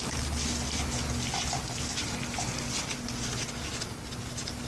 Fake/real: real